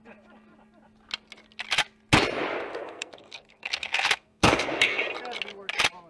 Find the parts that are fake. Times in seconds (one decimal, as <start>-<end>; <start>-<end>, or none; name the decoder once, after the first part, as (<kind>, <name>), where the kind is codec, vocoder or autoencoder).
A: 2.7-5.0 (codec, SNAC)